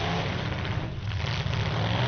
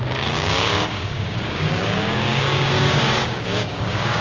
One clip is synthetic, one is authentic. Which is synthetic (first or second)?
second